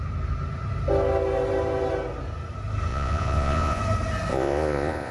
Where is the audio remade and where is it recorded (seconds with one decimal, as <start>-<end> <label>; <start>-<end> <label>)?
0.0-2.9 recorded; 2.9-3.8 remade; 3.8-4.3 recorded; 4.3-5.1 remade